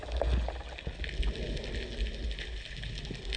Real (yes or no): yes